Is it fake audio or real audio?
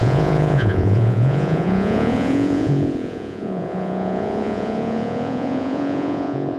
fake